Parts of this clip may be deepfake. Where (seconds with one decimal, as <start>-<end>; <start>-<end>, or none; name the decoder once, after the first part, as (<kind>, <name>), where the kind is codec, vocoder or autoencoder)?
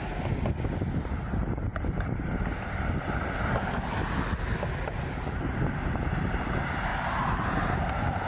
none